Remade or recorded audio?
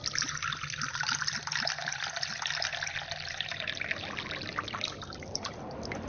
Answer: recorded